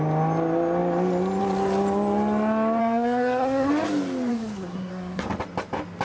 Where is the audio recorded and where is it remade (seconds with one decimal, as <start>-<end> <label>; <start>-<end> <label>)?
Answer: 0.0-2.8 recorded; 2.8-3.7 remade; 3.7-4.3 recorded; 4.3-5.2 remade; 5.2-6.0 recorded